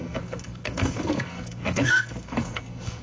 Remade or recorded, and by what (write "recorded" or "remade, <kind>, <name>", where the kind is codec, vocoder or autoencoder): remade, codec, SNAC